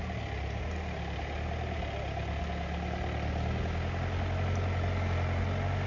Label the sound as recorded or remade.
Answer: recorded